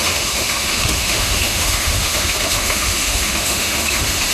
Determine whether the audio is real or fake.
fake